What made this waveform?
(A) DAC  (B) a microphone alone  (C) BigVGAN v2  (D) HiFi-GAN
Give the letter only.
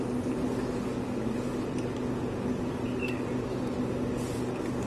B